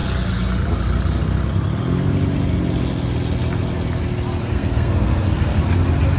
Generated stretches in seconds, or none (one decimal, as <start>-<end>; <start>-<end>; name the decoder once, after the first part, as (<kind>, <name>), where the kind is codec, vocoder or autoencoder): 4.4-5.6 (codec, SNAC)